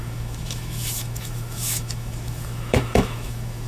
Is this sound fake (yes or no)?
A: yes